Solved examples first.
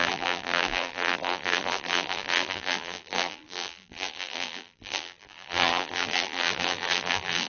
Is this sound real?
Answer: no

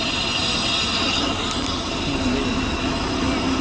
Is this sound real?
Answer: yes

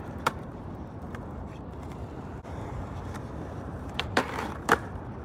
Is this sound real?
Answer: no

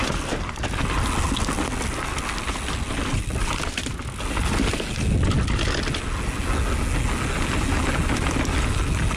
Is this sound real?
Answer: yes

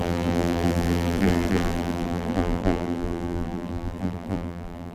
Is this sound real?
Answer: no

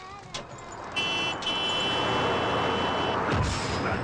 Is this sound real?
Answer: yes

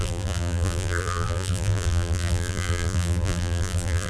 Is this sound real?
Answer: no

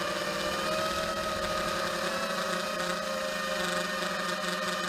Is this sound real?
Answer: yes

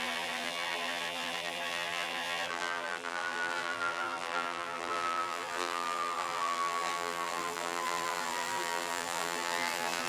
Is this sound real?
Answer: no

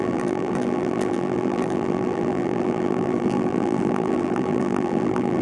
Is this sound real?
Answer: no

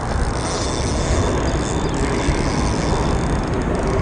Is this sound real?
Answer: yes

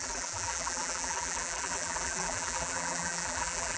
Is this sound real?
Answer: no